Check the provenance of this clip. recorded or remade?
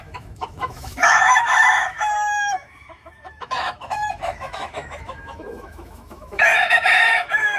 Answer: remade